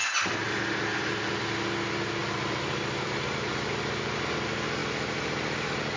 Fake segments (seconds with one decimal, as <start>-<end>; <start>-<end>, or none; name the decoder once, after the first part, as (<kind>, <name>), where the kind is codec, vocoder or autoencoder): 2.2-3.5 (vocoder, BigVGAN v2); 4.8-5.5